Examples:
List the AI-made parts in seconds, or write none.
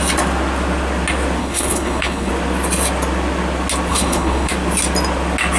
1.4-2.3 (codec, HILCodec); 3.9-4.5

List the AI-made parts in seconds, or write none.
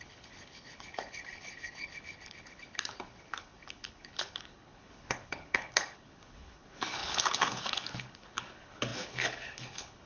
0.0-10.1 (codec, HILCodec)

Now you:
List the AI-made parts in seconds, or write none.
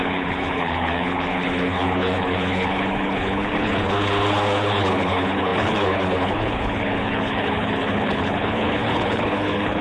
0.0-9.8 (codec, HILCodec)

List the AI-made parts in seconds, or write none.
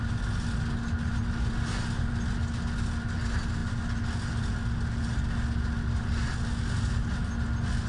none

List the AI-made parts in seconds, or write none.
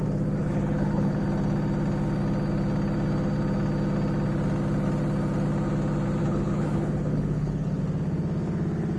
0.4-1.2 (codec, HILCodec); 6.2-7.8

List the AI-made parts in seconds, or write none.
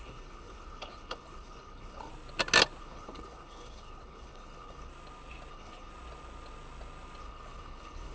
0.0-2.1 (codec, HILCodec); 2.8-4.9; 5.5-5.9; 7.2-8.1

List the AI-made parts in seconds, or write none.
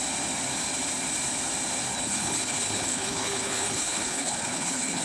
1.9-5.0 (codec, HILCodec)